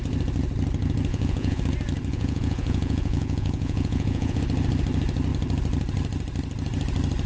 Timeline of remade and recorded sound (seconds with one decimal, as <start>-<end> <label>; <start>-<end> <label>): 0.0-1.1 recorded; 1.1-1.6 remade; 1.6-2.1 recorded; 2.1-4.4 remade; 4.4-7.3 recorded